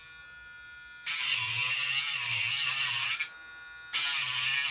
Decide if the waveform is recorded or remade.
recorded